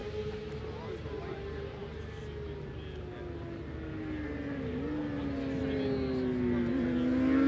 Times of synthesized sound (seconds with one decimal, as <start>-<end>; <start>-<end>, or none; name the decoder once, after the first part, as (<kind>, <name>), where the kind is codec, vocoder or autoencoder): none